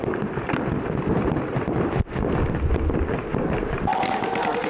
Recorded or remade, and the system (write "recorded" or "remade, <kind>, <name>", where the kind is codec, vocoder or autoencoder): recorded